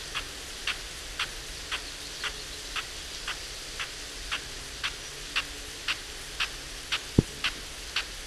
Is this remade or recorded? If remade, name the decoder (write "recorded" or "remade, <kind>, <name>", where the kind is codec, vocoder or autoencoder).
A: recorded